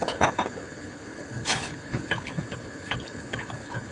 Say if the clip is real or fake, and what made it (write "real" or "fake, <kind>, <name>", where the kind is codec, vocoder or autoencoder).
fake, codec, HILCodec